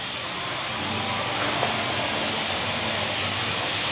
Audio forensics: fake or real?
real